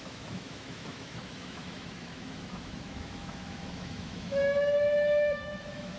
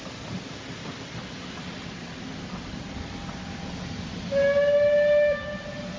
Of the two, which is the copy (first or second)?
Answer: first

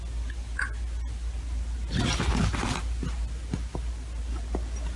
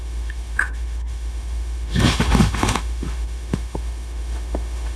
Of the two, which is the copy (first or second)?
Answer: second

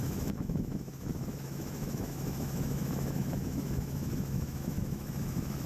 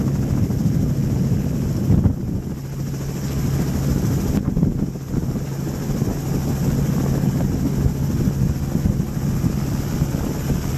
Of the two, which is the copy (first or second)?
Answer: first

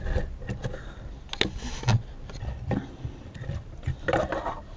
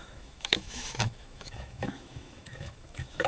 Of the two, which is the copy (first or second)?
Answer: second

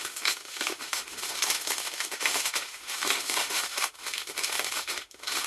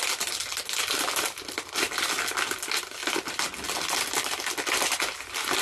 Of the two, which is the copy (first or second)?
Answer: first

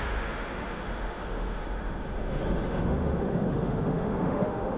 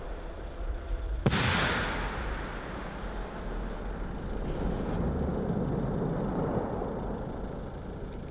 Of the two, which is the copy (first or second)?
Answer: first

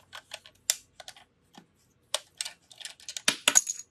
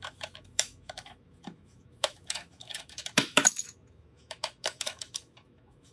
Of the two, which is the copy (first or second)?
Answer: second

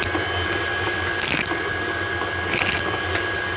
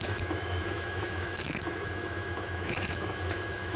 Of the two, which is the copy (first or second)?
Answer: second